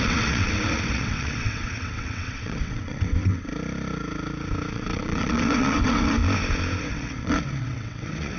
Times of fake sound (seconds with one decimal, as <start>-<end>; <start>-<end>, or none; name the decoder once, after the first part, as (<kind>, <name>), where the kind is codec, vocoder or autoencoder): 0.0-3.5 (vocoder, WaveNeXt); 4.7-6.2; 6.8-8.4